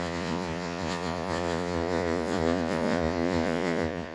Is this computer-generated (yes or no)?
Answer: yes